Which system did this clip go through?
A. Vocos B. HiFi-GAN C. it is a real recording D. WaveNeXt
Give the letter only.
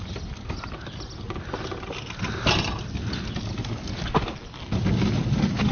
C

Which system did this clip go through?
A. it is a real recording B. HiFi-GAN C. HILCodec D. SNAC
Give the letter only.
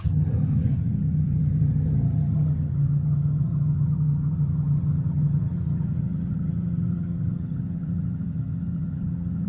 B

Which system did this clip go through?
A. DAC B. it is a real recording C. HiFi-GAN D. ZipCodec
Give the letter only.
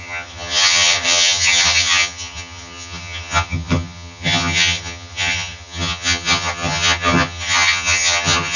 C